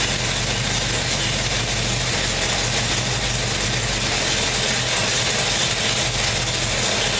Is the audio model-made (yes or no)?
no